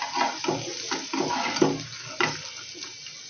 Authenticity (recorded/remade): recorded